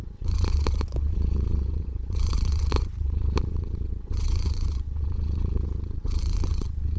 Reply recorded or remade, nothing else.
remade